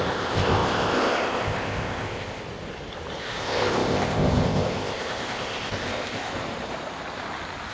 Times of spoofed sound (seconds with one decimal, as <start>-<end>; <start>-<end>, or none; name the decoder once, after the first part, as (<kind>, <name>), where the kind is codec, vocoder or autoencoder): 0.0-2.4 (codec, ZipCodec); 3.2-6.3